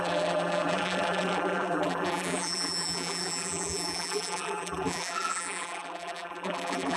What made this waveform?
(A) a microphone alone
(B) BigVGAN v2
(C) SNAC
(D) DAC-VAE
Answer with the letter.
B